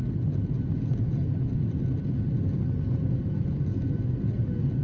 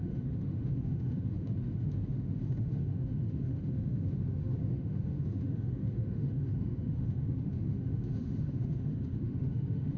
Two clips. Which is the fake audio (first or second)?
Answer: second